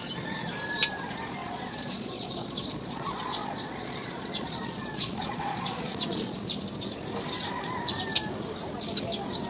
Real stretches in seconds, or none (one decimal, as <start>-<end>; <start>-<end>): 0.0-1.4; 6.4-9.5